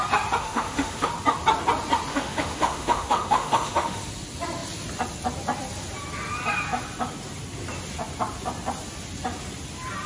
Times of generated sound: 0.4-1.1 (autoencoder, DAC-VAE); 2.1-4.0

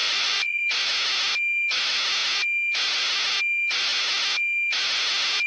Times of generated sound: 0.0-0.6 (vocoder, Vocos)

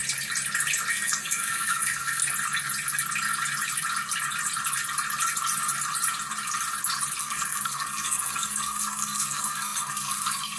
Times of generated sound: 0.9-2.2 (codec, SNAC); 7.2-10.6

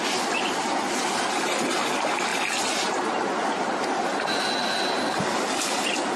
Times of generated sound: none

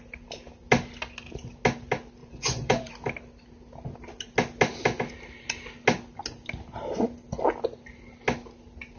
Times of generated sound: 2.2-2.9 (vocoder, Vocos)